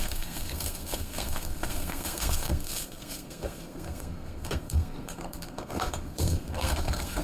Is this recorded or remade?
remade